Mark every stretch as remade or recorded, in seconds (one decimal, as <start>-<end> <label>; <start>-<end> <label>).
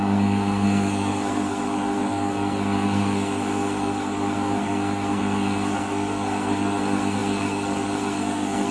0.0-8.7 remade